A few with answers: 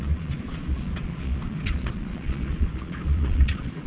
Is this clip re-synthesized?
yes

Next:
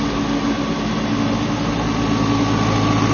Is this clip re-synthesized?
no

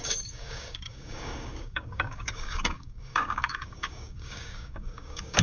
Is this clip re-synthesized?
yes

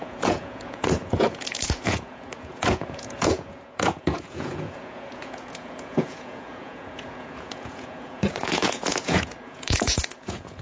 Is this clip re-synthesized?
yes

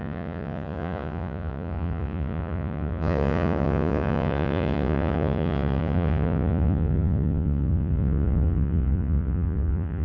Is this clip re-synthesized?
yes